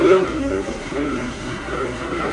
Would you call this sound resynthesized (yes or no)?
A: yes